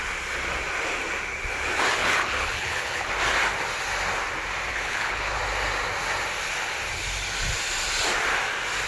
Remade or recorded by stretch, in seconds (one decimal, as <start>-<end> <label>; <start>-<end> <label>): 0.0-2.0 recorded; 2.0-3.1 remade; 3.1-4.7 recorded; 4.7-5.4 remade; 5.4-8.9 recorded